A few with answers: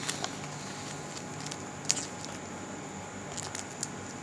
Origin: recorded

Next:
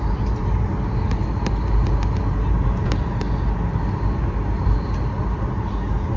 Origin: recorded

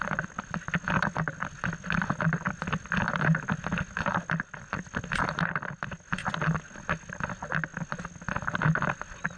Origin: recorded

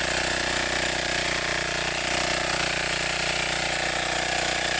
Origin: recorded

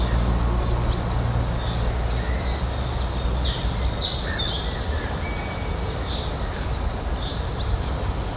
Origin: recorded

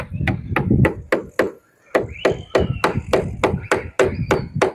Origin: recorded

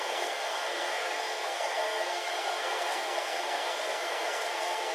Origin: remade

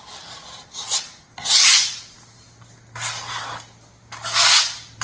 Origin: recorded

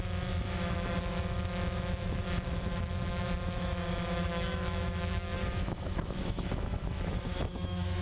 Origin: remade